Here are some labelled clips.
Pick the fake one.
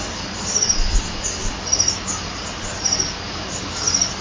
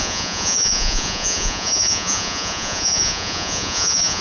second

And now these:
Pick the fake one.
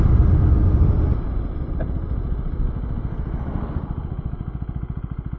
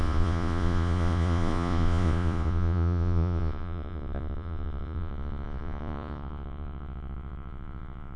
second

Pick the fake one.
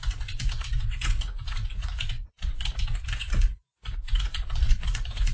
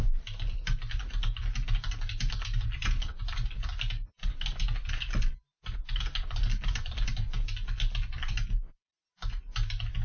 first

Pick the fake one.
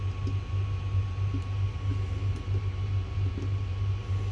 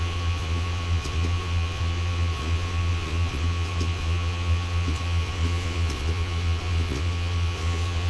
second